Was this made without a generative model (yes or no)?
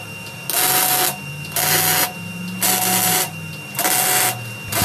yes